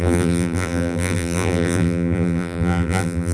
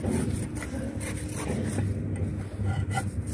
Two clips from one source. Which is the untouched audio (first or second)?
second